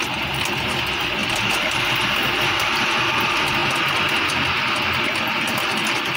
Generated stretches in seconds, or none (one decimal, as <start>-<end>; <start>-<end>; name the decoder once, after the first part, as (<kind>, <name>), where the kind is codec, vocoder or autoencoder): none